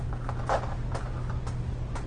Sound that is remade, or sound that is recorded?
recorded